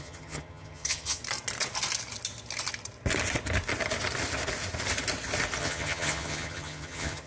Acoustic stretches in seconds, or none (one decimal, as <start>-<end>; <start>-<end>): 1.2-5.6